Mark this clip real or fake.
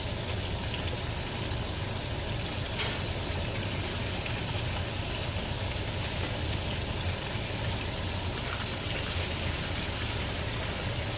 real